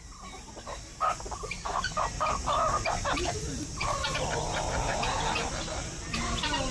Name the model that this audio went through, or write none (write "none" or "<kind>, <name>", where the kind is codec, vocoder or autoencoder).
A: none